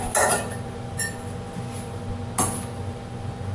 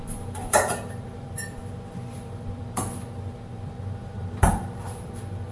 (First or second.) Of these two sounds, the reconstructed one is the second